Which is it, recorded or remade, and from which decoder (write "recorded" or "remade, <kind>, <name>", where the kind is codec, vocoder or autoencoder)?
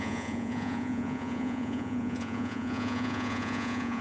remade, vocoder, Vocos